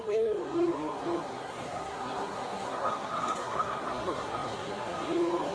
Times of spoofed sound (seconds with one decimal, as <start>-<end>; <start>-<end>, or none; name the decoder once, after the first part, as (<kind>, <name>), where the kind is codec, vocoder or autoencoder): 0.0-5.5 (codec, SNAC)